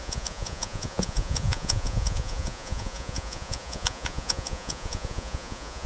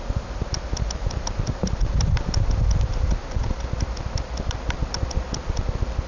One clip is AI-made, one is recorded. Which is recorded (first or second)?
second